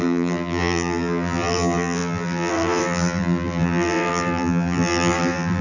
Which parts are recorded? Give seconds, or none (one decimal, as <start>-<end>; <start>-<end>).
none